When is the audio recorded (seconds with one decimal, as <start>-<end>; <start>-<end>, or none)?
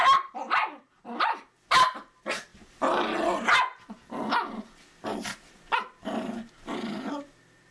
0.0-7.7